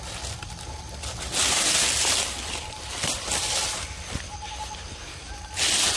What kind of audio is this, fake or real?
real